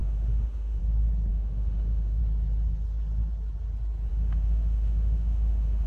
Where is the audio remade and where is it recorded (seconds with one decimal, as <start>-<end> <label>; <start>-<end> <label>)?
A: 0.0-0.8 remade; 0.8-1.3 recorded; 1.3-2.2 remade; 2.2-4.1 recorded; 4.1-5.9 remade